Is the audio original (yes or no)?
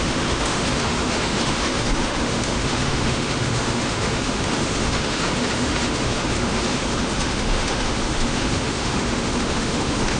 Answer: no